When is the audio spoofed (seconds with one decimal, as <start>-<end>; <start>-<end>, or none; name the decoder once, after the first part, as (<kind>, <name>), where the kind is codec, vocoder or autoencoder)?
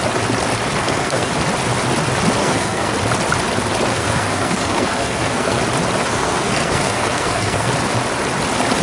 0.8-1.3 (codec, SNAC); 2.4-2.9; 3.9-5.6; 6.1-7.7